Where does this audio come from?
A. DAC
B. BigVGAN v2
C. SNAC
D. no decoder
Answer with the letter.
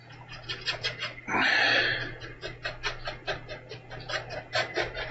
D